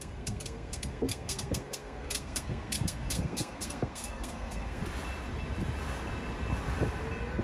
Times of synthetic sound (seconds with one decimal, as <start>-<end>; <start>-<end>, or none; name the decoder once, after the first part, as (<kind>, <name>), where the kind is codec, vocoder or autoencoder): 0.0-4.8 (codec, SNAC)